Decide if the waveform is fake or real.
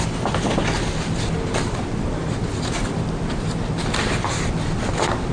real